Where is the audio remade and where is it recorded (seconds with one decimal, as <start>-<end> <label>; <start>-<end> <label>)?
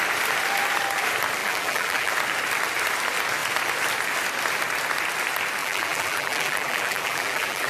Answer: 0.0-1.4 recorded; 1.4-2.1 remade; 2.1-5.6 recorded; 5.6-7.7 remade